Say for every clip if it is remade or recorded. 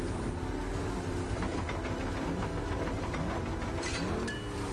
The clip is recorded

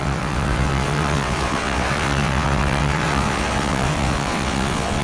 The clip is remade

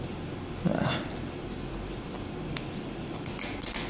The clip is recorded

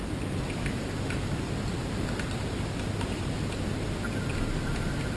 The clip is recorded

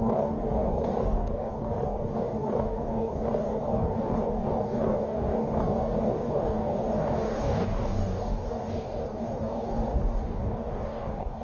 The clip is remade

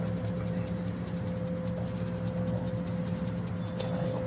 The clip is recorded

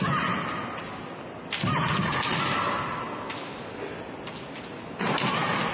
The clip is recorded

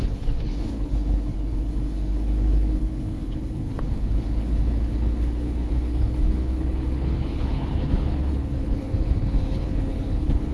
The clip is remade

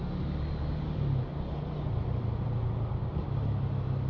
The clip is recorded